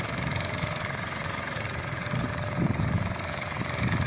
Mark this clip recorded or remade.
remade